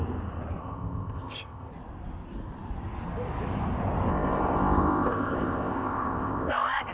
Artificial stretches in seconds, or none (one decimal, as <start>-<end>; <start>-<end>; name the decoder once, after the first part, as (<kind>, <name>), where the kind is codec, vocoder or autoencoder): 0.6-1.7 (codec, ZipCodec); 4.1-6.9